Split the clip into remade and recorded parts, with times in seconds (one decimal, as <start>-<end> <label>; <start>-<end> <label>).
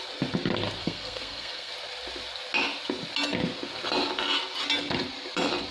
0.0-0.8 recorded; 0.8-1.7 remade; 1.7-5.7 recorded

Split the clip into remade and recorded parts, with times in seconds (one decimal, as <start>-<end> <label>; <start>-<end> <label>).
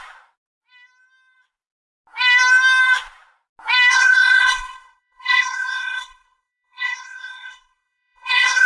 0.0-3.9 recorded; 3.9-8.7 remade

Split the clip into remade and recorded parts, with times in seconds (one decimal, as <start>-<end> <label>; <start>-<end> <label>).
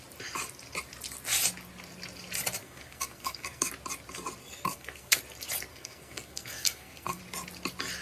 0.0-2.6 recorded; 2.6-3.7 remade; 3.7-4.4 recorded; 4.4-5.2 remade; 5.2-5.7 recorded; 5.7-7.2 remade; 7.2-8.0 recorded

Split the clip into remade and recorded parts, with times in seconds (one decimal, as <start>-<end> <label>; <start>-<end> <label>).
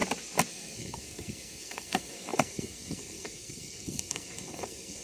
0.0-0.5 recorded; 0.5-5.0 remade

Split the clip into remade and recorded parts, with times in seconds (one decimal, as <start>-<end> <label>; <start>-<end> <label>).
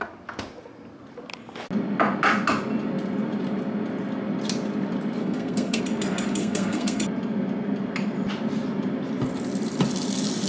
0.0-5.2 recorded; 5.2-5.8 remade; 5.8-6.4 recorded; 6.4-7.0 remade; 7.0-10.5 recorded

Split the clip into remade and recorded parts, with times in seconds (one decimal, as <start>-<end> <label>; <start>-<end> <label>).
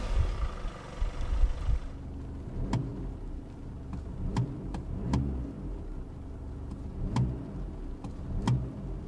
0.0-9.1 recorded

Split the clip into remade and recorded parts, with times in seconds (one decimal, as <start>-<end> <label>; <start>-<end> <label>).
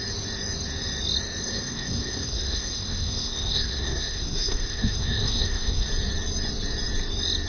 0.0-1.4 recorded; 1.4-5.9 remade; 5.9-7.5 recorded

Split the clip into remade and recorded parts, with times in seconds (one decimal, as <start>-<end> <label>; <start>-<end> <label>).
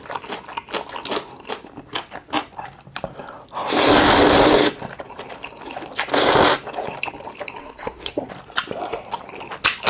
0.0-7.6 recorded; 7.6-8.3 remade; 8.3-9.9 recorded